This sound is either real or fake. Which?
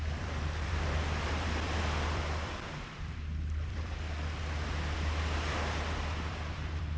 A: fake